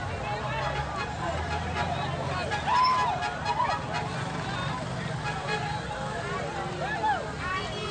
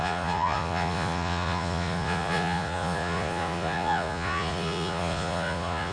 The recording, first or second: first